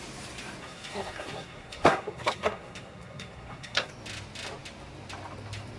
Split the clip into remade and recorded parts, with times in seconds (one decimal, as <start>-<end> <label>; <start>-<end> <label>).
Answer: 0.0-0.6 recorded; 0.6-3.9 remade; 3.9-5.8 recorded

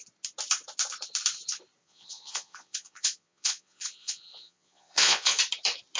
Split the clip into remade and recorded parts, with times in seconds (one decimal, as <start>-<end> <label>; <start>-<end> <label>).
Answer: 0.0-1.8 recorded; 1.8-5.4 remade; 5.4-6.0 recorded